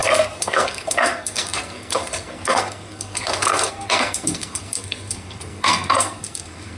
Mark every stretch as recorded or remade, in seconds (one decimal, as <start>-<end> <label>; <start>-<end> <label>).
0.0-6.8 remade